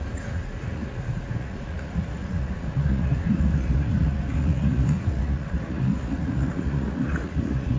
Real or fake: fake